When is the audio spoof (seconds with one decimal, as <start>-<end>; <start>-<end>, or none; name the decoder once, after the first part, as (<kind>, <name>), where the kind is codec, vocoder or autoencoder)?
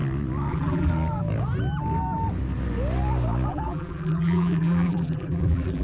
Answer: 0.5-0.9 (vocoder, BigVGAN v2); 3.5-5.8